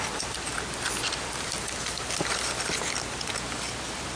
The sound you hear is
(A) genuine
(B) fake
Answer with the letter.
A